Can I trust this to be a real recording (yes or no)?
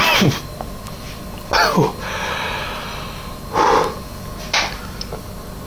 yes